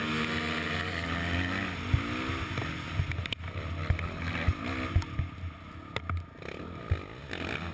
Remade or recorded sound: recorded